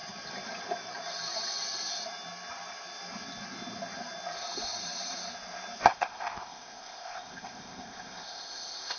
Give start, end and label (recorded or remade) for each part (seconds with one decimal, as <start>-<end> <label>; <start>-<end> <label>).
0.0-5.9 recorded; 5.9-9.0 remade